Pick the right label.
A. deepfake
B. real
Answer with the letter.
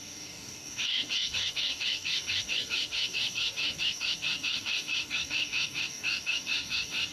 A